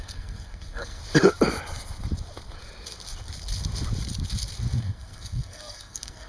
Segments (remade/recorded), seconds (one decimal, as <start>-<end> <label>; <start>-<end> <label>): 0.0-1.0 remade; 1.0-4.8 recorded; 4.8-6.3 remade